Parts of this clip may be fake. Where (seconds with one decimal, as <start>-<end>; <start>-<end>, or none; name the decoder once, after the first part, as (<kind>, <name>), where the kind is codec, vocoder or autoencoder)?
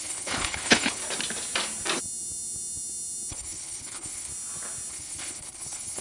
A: 0.0-1.0 (codec, HILCodec); 3.3-4.3; 4.9-6.0